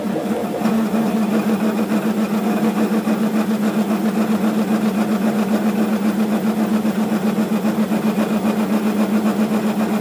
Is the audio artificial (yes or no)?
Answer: no